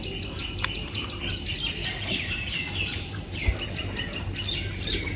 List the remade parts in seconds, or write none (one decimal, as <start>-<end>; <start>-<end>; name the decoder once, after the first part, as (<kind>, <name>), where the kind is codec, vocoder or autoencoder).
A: 0.4-1.0 (vocoder, BigVGAN v2); 1.8-3.5